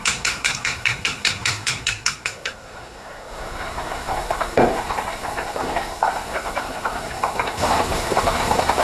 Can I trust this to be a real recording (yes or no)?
no